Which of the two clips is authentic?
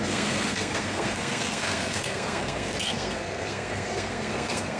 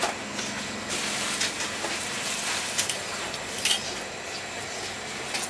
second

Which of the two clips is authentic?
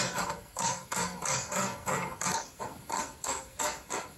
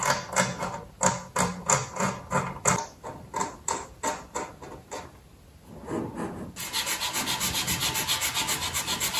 second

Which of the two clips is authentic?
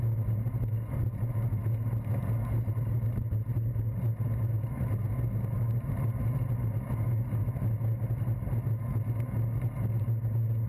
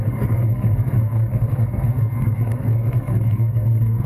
first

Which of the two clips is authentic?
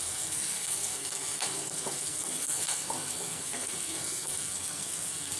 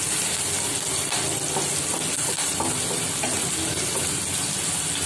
second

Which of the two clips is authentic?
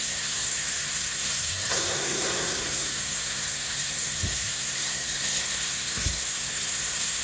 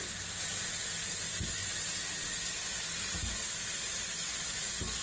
second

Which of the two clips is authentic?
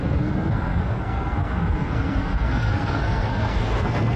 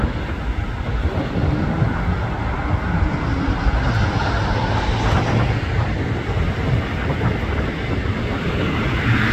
second